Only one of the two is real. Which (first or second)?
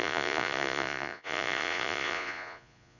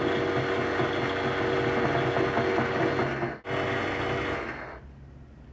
second